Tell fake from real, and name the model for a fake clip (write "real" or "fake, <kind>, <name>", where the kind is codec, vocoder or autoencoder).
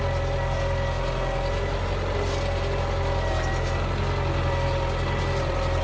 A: real